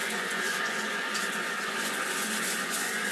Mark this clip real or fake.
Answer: fake